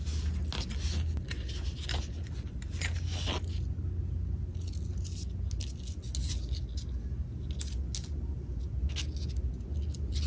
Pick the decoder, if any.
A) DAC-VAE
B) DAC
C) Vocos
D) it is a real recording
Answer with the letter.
D